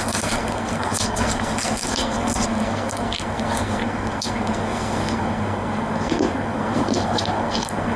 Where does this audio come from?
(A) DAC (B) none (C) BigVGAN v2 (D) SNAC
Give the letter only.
D